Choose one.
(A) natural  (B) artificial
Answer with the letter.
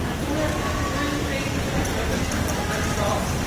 A